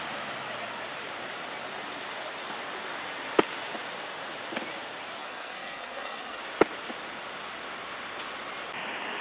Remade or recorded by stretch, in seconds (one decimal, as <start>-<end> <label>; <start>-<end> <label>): 0.0-5.2 recorded; 5.2-6.4 remade; 6.4-9.2 recorded